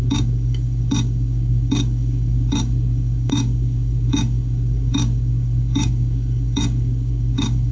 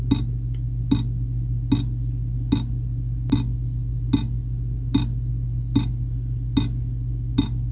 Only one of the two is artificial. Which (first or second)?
first